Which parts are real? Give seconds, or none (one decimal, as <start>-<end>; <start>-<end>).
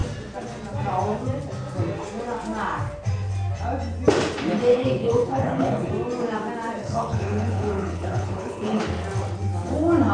0.0-4.7; 5.9-6.8; 8.8-10.1